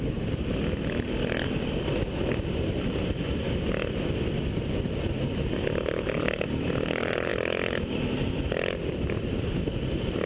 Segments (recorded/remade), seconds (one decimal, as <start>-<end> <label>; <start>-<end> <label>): 0.0-10.3 recorded